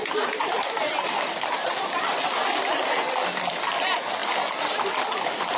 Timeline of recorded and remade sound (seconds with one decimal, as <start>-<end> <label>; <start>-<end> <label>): 0.0-5.6 recorded